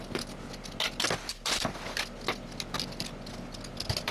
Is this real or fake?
real